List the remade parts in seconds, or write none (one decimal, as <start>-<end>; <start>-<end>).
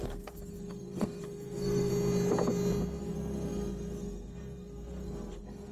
0.0-1.9; 3.0-5.7